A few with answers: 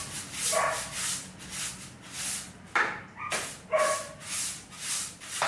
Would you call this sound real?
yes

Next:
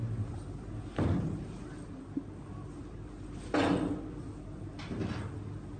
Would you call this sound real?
yes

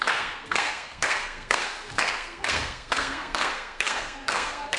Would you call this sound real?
no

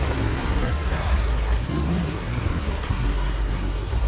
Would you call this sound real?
no